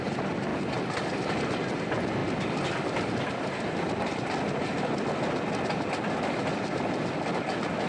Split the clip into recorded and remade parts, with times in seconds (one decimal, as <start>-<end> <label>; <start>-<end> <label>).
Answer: 0.0-7.9 recorded